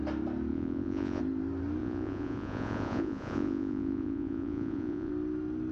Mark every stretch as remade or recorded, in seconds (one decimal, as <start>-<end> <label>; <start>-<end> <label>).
0.0-0.5 recorded; 0.5-1.2 remade; 1.2-1.8 recorded; 1.8-5.1 remade; 5.1-5.7 recorded

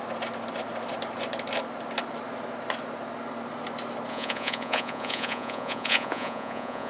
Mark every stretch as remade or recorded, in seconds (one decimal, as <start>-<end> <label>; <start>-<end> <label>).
0.0-4.1 recorded; 4.1-6.9 remade

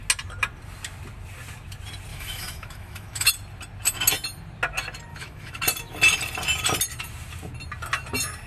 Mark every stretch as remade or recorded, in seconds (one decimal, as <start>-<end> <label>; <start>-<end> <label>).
0.0-2.1 recorded; 2.1-3.3 remade; 3.3-5.1 recorded; 5.1-5.6 remade; 5.6-8.5 recorded

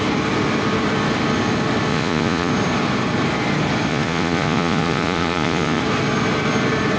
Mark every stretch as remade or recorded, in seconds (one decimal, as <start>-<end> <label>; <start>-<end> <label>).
0.0-1.9 recorded; 1.9-2.5 remade; 2.5-3.9 recorded; 3.9-5.8 remade; 5.8-7.0 recorded

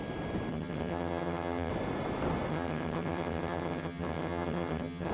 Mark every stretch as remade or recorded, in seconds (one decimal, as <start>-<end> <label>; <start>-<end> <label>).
0.0-0.5 recorded; 0.5-1.7 remade; 1.7-2.5 recorded; 2.5-5.1 remade